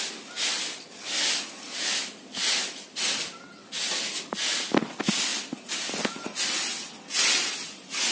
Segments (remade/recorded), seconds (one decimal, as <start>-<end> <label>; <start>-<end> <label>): 0.0-8.1 recorded